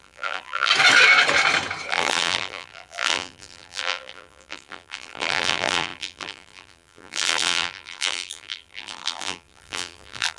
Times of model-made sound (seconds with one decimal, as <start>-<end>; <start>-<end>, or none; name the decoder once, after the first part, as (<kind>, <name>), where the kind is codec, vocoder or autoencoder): 0.0-0.7 (vocoder, BigVGAN v2); 1.9-10.4

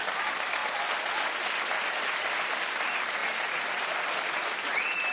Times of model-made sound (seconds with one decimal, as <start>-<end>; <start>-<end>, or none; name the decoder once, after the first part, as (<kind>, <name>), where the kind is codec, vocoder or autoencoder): 0.0-0.6 (vocoder, BigVGAN v2); 2.2-3.2; 3.9-5.1

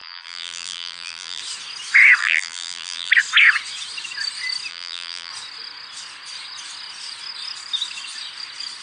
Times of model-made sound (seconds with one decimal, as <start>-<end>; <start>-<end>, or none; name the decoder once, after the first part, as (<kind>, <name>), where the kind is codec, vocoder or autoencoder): 0.0-1.4 (vocoder, BigVGAN v2); 2.2-3.1; 4.7-5.3